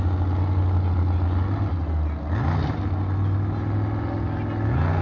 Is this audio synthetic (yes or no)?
no